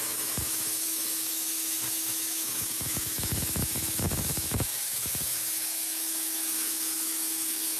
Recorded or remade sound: remade